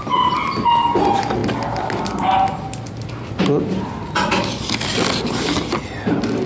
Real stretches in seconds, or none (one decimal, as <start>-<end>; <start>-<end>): 0.0-6.5